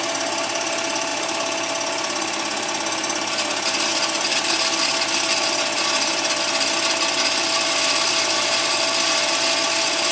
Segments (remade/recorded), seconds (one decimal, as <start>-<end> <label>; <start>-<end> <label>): 0.0-10.1 recorded